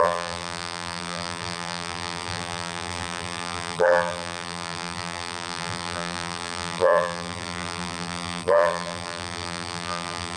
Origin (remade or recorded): remade